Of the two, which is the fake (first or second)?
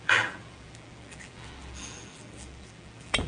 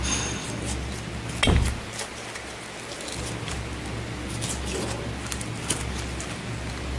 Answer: first